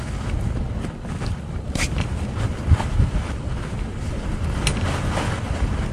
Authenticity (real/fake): fake